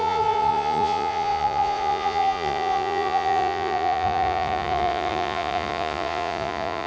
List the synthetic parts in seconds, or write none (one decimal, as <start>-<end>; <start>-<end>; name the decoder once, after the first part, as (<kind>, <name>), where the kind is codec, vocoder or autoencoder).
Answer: 0.0-6.9 (vocoder, Vocos)